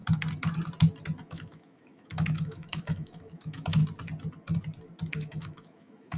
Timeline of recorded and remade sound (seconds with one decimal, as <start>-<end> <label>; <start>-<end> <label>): 0.0-1.3 recorded; 1.3-3.8 remade; 3.8-5.1 recorded; 5.1-6.2 remade